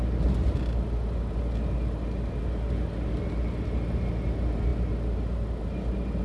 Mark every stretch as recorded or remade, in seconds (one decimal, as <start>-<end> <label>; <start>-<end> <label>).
0.0-6.2 recorded